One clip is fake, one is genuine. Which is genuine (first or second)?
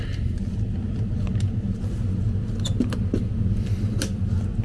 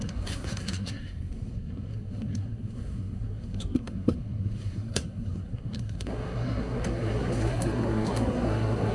first